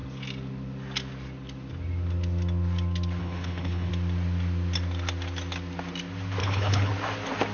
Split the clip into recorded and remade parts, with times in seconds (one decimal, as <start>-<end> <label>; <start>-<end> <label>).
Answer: 0.0-3.2 recorded; 3.2-3.9 remade; 3.9-6.4 recorded; 6.4-6.9 remade; 6.9-7.5 recorded